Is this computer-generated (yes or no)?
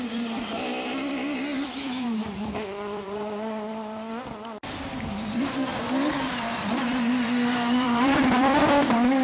yes